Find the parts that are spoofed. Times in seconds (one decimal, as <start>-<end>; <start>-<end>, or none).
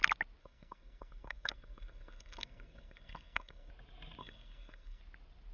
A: 0.4-3.7; 4.2-5.0